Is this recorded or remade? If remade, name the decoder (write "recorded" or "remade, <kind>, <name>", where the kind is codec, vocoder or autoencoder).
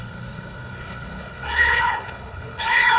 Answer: remade, codec, HILCodec